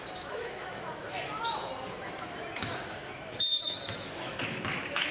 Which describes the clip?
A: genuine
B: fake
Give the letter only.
B